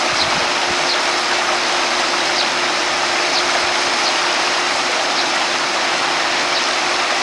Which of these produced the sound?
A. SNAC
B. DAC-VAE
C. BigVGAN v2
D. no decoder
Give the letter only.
D